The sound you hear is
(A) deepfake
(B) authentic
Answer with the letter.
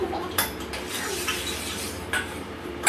A